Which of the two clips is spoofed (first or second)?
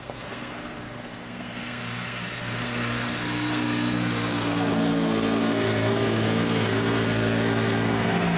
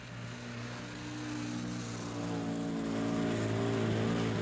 first